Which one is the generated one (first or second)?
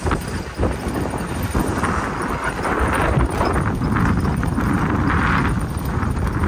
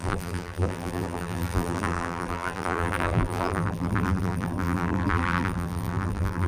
second